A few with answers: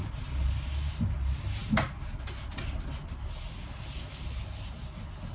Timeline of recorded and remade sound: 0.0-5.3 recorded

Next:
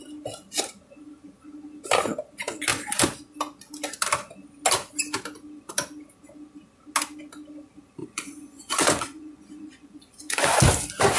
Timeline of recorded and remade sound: 0.0-8.0 recorded; 8.0-10.6 remade; 10.6-11.2 recorded

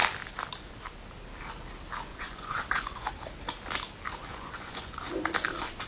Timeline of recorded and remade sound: 0.0-2.1 recorded; 2.1-3.1 remade; 3.1-4.3 recorded; 4.3-5.0 remade; 5.0-5.9 recorded